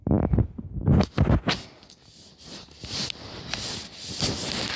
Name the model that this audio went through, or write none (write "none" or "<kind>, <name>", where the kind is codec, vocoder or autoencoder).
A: none